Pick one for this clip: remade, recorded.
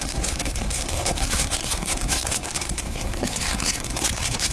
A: remade